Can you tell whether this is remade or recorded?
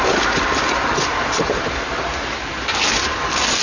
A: recorded